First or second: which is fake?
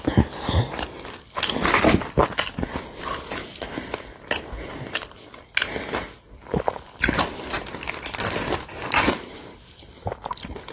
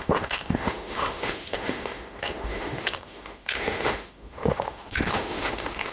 second